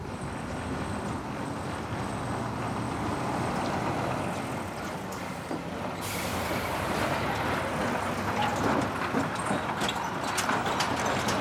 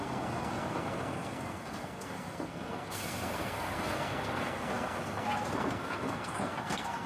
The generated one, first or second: second